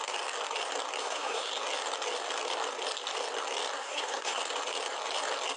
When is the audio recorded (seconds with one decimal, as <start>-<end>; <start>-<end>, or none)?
0.0-1.0; 1.5-3.8; 4.4-5.6